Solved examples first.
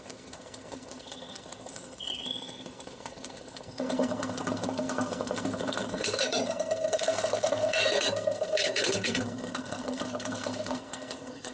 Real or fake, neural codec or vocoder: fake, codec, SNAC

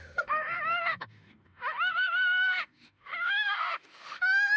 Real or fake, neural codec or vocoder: fake, autoencoder, DAC-VAE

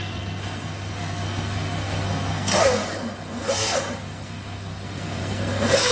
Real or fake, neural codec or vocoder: fake, codec, SNAC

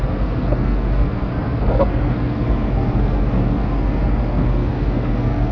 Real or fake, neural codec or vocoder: fake, codec, SNAC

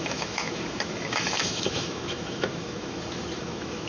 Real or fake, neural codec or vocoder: fake, autoencoder, DAC-VAE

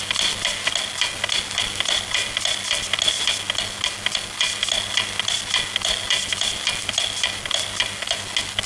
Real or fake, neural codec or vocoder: real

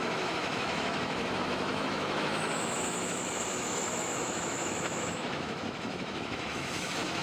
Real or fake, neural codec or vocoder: fake, autoencoder, DAC-VAE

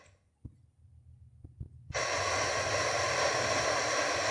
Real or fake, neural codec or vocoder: real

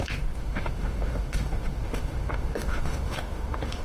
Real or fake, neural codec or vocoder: fake, autoencoder, DAC-VAE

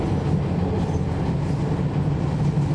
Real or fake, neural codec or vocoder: real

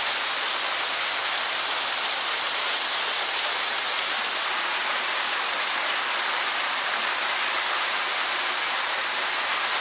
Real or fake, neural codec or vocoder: real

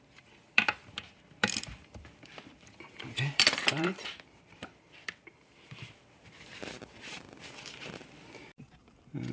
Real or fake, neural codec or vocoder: fake, vocoder, BigVGAN v2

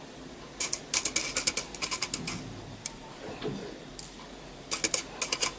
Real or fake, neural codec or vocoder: real